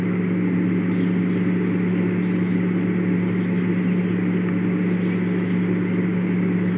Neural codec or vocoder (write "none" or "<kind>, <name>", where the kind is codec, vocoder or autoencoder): none